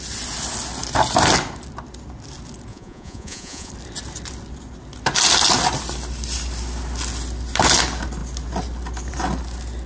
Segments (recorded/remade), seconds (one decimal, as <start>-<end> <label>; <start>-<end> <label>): 0.0-2.7 recorded; 2.7-3.7 remade; 3.7-9.9 recorded